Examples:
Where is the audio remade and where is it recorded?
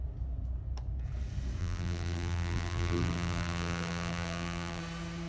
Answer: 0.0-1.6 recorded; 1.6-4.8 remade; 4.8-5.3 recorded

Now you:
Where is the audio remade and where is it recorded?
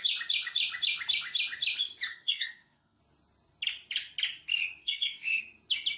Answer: 0.0-2.1 recorded; 2.1-3.0 remade; 3.0-4.8 recorded; 4.8-5.4 remade; 5.4-6.0 recorded